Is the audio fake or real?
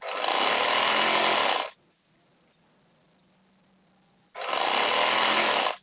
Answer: real